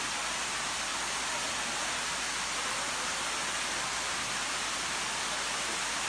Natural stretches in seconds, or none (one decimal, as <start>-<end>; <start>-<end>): 0.0-6.1